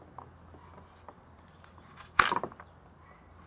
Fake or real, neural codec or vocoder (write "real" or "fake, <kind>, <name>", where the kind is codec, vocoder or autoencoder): real